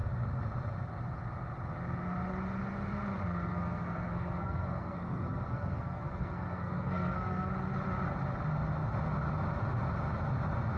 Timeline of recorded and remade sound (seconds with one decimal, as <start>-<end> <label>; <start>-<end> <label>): 0.0-3.2 recorded; 3.2-7.5 remade; 7.5-10.8 recorded